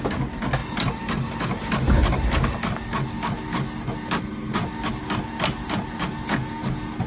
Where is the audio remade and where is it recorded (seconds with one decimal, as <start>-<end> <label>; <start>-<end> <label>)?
0.0-7.1 recorded